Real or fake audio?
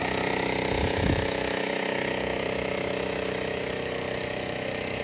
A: fake